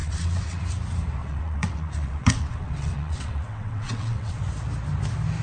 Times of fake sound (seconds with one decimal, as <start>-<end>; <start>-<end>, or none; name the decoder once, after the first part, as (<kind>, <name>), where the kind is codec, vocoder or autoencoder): 0.0-0.6 (vocoder, WaveNeXt); 1.2-4.4

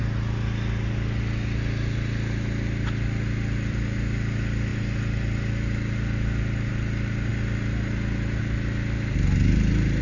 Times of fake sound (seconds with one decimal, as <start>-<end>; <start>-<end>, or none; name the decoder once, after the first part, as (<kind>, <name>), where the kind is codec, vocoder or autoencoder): none

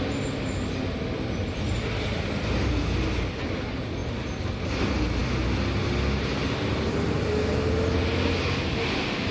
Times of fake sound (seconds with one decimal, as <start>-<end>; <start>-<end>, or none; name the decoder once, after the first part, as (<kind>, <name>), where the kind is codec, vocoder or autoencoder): none

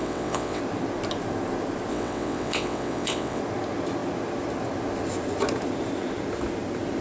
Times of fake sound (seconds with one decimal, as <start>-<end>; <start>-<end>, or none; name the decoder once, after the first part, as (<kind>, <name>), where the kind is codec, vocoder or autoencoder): 0.0-0.6 (vocoder, WaveNeXt); 1.9-3.4

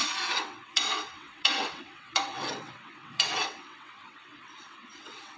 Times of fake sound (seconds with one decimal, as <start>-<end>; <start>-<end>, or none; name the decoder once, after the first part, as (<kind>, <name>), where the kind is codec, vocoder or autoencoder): 0.0-5.4 (vocoder, WaveNeXt)

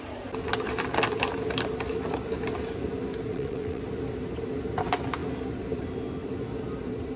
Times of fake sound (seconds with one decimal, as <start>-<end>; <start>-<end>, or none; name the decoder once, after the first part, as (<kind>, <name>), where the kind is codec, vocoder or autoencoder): 3.3-3.8 (vocoder, WaveNeXt)

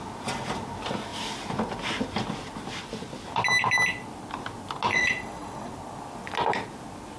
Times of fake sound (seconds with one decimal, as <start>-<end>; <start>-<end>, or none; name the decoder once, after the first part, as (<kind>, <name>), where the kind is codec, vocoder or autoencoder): 4.9-5.7 (vocoder, WaveNeXt)